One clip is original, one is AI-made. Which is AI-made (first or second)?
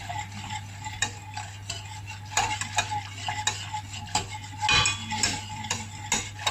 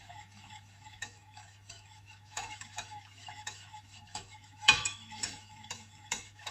second